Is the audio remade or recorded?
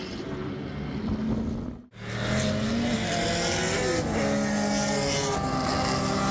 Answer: recorded